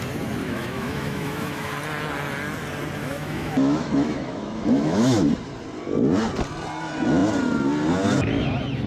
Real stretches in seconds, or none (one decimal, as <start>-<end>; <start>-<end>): 0.0-0.4; 1.7-3.0; 5.3-8.9

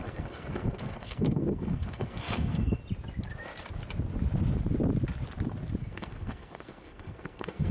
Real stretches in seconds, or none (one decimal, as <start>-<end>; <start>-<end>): 2.8-5.8

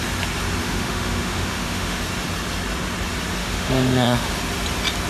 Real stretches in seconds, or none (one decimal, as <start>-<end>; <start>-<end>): 0.0-0.6; 2.0-3.4; 4.3-5.1

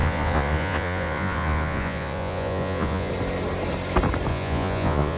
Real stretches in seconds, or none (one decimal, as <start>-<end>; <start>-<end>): 3.1-4.3